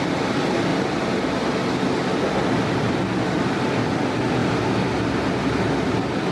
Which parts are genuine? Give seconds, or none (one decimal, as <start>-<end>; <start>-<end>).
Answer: 0.0-6.3